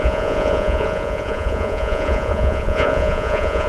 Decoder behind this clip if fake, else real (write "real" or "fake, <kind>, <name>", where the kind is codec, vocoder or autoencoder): fake, vocoder, Vocos